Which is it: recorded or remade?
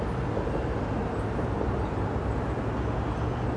recorded